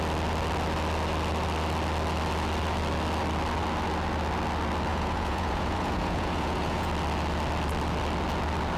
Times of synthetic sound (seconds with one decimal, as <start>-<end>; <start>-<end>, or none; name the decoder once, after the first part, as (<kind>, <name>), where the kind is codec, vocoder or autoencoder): 4.9-6.9 (vocoder, Vocos)